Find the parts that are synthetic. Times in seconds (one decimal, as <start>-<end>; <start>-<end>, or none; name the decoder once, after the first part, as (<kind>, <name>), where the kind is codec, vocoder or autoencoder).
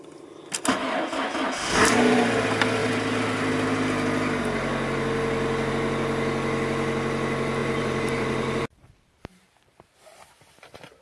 7.6-9.8 (vocoder, BigVGAN v2)